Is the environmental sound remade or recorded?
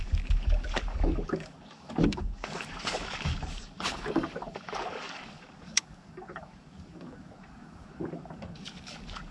remade